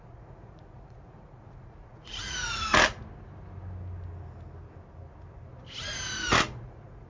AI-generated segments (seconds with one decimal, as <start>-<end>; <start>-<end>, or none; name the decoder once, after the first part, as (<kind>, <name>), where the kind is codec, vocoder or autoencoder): 0.0-2.7 (vocoder, Vocos); 6.6-7.1